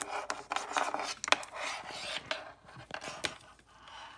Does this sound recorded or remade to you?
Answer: recorded